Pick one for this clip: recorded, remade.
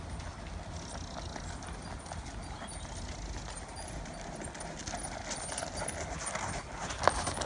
recorded